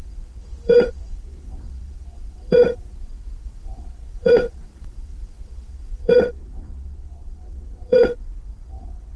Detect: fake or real fake